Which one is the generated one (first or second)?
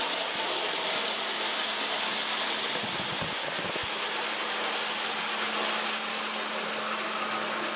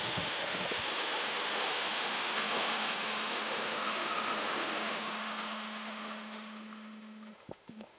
second